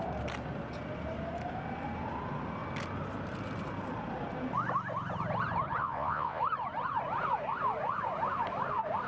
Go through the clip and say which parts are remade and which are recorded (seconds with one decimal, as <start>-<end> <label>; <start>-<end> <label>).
0.0-5.8 recorded; 5.8-6.4 remade; 6.4-9.1 recorded